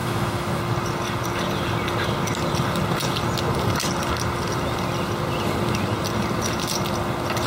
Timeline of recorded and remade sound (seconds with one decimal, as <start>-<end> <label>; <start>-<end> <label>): 0.0-0.6 remade; 0.6-7.5 recorded

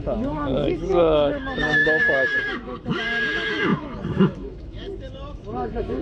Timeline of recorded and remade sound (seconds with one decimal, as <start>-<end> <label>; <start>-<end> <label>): 0.0-6.0 remade

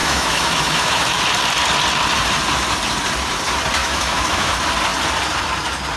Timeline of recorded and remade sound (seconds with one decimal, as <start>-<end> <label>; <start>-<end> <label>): 0.0-1.2 remade; 1.2-3.8 recorded; 3.8-4.5 remade; 4.5-6.0 recorded

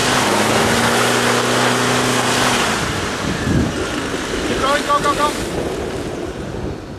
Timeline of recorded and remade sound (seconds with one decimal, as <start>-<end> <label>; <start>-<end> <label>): 0.0-7.0 recorded

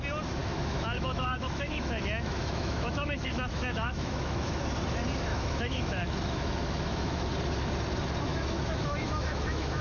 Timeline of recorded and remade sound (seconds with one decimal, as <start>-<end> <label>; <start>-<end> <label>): 0.0-0.4 recorded; 0.4-4.6 remade; 4.6-5.3 recorded; 5.3-7.3 remade; 7.3-8.3 recorded; 8.3-9.8 remade